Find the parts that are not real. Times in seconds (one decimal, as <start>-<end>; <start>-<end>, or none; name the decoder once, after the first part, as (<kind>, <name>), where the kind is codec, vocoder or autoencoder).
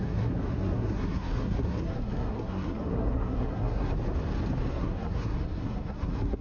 0.0-3.9 (codec, SNAC); 4.7-6.4